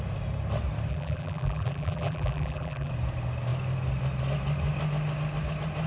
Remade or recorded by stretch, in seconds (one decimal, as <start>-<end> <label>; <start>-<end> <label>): 0.0-0.9 recorded; 0.9-2.9 remade; 2.9-5.9 recorded